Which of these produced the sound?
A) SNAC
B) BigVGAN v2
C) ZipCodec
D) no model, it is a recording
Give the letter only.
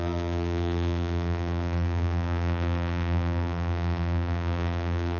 B